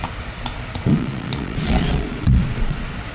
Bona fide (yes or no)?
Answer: no